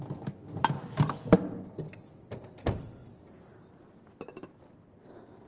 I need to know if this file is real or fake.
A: real